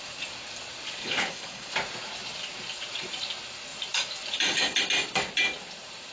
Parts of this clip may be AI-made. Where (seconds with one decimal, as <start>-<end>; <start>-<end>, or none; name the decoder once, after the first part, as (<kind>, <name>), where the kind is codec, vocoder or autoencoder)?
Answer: 1.0-1.7 (codec, HILCodec)